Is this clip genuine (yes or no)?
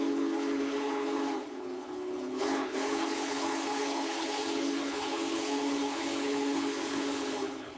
no